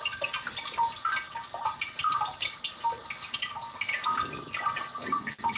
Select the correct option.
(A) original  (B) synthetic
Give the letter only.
A